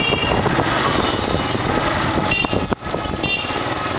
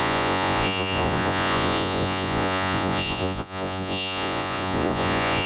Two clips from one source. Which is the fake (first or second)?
second